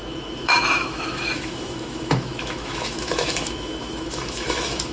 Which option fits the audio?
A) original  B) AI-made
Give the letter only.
B